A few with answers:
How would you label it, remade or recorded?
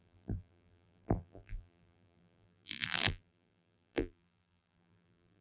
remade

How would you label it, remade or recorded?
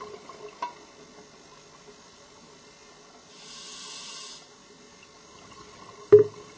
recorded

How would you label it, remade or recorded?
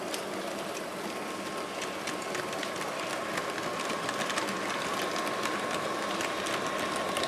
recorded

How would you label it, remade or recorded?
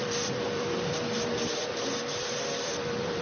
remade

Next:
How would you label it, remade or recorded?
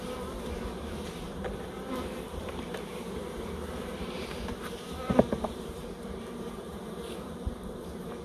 remade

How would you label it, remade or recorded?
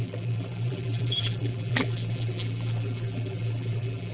remade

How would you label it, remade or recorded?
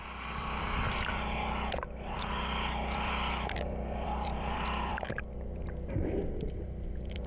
remade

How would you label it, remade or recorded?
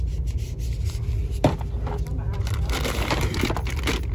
recorded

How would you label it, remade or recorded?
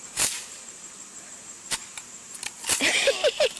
remade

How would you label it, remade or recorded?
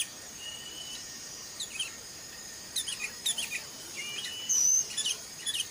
remade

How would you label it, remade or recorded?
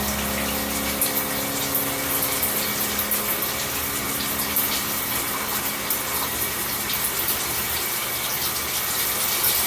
recorded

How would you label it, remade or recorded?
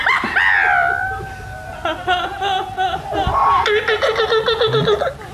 recorded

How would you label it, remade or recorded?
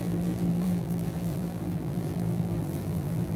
remade